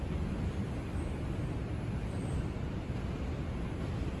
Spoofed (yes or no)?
no